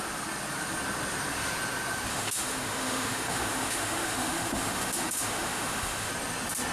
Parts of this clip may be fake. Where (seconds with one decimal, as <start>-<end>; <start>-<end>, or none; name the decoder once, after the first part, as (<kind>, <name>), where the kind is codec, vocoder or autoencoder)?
2.1-6.1 (autoencoder, DAC-VAE)